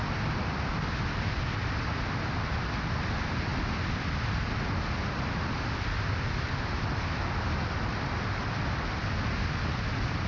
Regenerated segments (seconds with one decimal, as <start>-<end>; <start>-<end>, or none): none